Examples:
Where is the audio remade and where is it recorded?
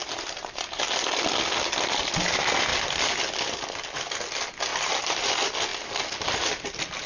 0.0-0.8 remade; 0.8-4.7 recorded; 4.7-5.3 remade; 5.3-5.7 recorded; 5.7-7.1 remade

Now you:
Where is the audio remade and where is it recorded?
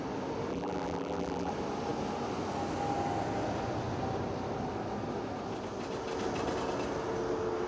0.0-0.5 recorded; 0.5-1.5 remade; 1.5-7.7 recorded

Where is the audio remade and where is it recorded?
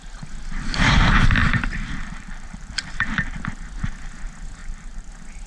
0.0-1.4 recorded; 1.4-3.4 remade; 3.4-4.6 recorded; 4.6-5.1 remade; 5.1-5.5 recorded